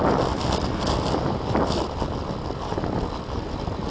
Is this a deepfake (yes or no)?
no